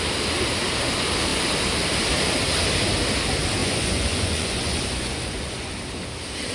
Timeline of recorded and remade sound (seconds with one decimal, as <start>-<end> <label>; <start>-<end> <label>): 0.0-3.6 recorded; 3.6-5.7 remade; 5.7-6.5 recorded